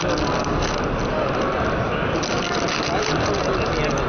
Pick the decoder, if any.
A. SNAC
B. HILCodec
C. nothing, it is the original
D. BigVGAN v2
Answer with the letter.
C